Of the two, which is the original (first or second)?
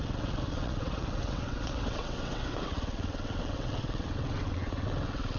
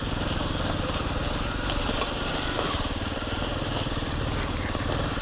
second